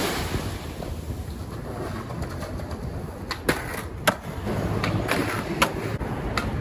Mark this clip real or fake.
real